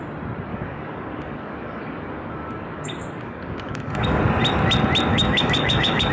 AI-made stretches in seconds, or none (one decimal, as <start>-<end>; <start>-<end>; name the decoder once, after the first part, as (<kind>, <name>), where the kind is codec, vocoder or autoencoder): 0.5-4.2 (codec, DAC); 5.1-6.1